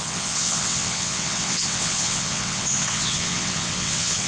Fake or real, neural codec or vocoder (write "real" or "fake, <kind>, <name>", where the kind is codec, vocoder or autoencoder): fake, vocoder, WaveNeXt